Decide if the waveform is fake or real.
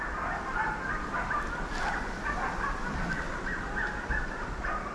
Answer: real